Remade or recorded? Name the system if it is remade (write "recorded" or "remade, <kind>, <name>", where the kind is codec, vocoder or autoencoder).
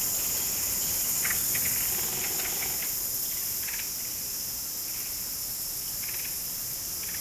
recorded